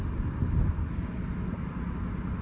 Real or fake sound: real